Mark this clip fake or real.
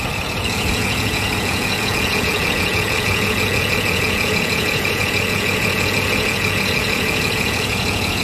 fake